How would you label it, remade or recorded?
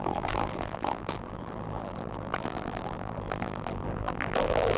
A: remade